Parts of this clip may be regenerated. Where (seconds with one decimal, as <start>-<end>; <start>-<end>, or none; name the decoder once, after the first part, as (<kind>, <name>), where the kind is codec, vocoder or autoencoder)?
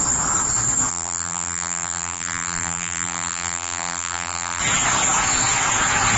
0.9-4.6 (vocoder, BigVGAN v2)